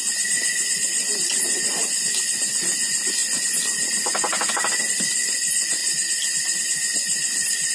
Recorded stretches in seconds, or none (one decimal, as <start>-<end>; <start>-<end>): 0.0-7.7